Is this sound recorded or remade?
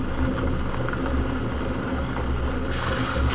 recorded